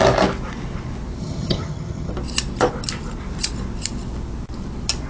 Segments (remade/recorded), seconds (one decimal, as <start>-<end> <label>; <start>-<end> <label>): 0.0-1.2 recorded; 1.2-2.1 remade; 2.1-5.1 recorded